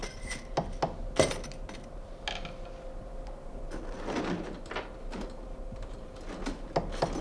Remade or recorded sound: recorded